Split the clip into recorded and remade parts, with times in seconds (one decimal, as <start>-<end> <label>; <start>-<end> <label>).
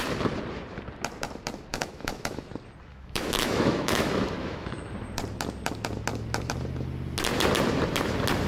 0.0-1.7 recorded; 1.7-2.5 remade; 2.5-2.9 recorded; 2.9-4.9 remade; 4.9-8.5 recorded